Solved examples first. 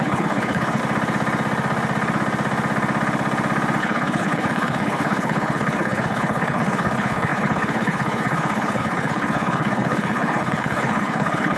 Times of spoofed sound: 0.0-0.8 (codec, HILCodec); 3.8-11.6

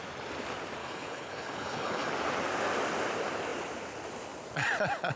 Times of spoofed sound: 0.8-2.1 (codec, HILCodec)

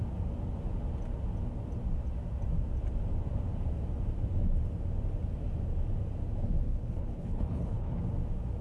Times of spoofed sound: 6.7-8.0 (codec, HILCodec)

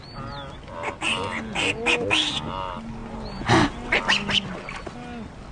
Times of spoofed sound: none